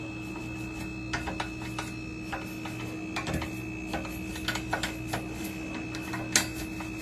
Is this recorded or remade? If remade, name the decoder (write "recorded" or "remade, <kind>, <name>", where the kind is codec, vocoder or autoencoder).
recorded